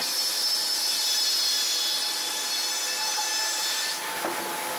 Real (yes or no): yes